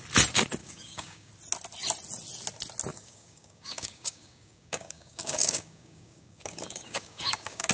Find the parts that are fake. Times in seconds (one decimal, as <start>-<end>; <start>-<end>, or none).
0.6-1.3; 2.9-7.7

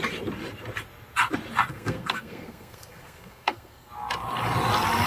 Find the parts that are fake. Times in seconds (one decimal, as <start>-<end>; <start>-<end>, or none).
1.7-3.9

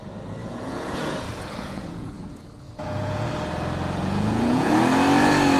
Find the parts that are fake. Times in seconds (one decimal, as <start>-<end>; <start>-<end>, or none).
0.4-3.3; 4.0-4.7

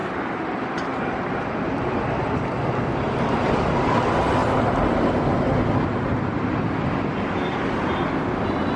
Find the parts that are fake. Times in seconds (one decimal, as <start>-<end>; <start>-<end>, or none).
0.0-2.3; 4.4-5.1

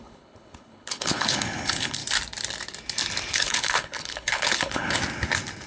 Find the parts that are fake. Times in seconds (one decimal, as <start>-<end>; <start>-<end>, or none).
0.0-2.0; 3.3-5.0

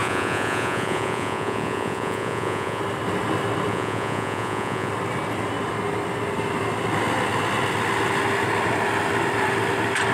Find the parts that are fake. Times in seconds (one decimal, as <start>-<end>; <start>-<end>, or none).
0.0-2.8; 3.7-4.9

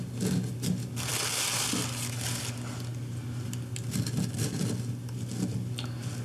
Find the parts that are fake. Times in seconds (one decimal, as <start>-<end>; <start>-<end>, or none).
none

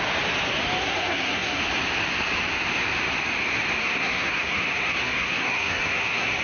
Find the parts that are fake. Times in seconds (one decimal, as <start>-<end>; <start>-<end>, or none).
0.8-1.6; 3.8-6.4